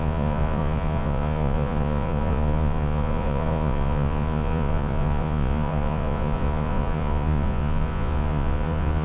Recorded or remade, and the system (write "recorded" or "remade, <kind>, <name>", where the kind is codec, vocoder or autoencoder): remade, vocoder, Vocos